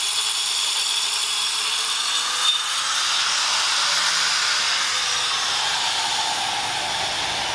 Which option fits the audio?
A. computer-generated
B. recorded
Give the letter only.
B